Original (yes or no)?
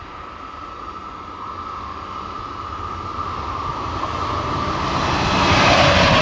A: yes